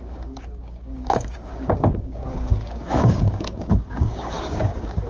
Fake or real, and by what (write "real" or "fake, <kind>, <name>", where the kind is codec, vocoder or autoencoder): fake, codec, DAC